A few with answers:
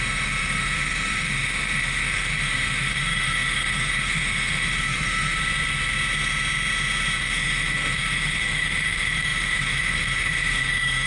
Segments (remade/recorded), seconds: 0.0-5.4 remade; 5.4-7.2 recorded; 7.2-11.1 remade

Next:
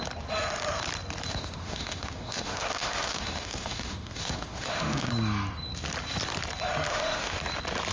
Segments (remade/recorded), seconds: 0.0-1.3 recorded; 1.3-5.1 remade; 5.1-6.9 recorded; 6.9-7.4 remade; 7.4-7.9 recorded

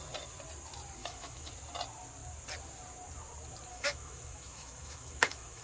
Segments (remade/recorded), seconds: 0.0-1.0 recorded; 1.0-1.5 remade; 1.5-3.7 recorded; 3.7-5.6 remade

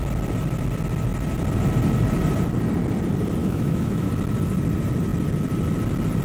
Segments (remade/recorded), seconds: 0.0-3.4 recorded; 3.4-4.1 remade; 4.1-6.2 recorded

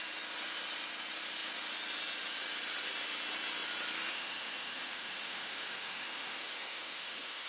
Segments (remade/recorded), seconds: 0.0-4.1 recorded; 4.1-7.5 remade

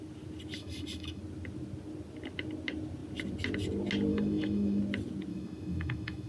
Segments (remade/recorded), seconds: 0.0-0.6 recorded; 0.6-1.2 remade; 1.2-4.1 recorded; 4.1-4.8 remade; 4.8-5.3 recorded; 5.3-6.3 remade